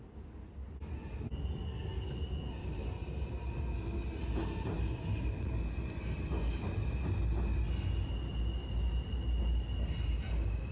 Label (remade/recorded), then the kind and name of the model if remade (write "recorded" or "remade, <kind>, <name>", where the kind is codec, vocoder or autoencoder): recorded